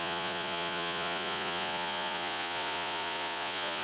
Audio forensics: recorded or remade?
remade